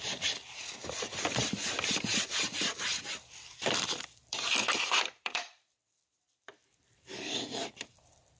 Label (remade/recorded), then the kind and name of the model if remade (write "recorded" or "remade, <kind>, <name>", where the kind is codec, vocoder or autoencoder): remade, vocoder, BigVGAN v2